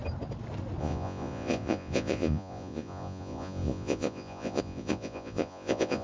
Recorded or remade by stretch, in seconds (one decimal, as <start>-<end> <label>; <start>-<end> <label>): 0.0-0.8 recorded; 0.8-6.0 remade